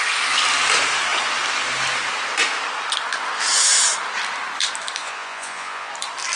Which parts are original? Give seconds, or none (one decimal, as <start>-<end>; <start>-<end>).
0.0-5.0; 5.9-6.4